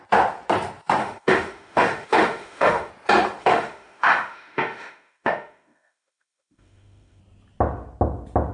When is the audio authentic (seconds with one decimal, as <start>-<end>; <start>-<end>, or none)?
0.0-1.0; 2.9-3.4; 7.2-8.5